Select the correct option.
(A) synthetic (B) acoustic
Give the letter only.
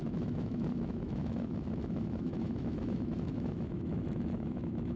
A